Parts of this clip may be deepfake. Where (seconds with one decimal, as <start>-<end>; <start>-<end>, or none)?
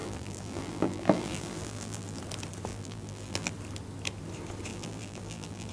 0.0-2.2; 2.7-3.5; 4.7-5.7